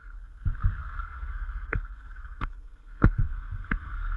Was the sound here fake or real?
fake